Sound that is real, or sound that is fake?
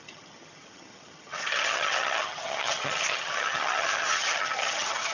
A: fake